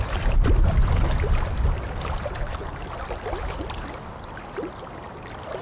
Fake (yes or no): no